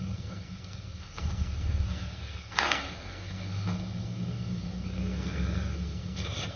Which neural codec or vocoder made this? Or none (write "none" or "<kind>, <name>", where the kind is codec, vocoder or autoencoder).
codec, SNAC